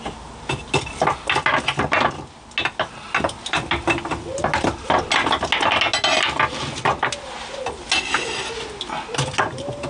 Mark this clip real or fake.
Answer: real